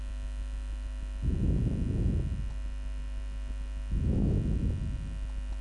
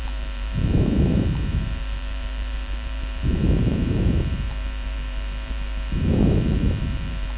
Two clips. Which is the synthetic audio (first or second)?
second